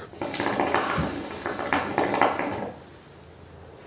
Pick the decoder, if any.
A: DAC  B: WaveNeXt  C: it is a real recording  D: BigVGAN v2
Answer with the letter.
C